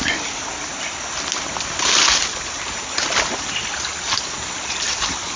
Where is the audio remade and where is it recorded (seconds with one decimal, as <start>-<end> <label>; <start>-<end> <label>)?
0.0-5.4 recorded